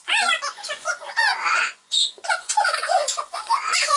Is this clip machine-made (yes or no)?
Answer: yes